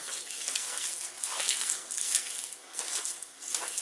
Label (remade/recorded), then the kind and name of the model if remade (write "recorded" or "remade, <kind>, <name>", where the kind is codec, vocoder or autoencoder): remade, codec, SNAC